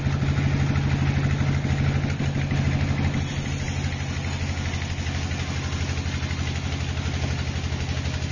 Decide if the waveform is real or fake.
real